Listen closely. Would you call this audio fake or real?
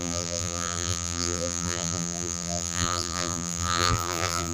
fake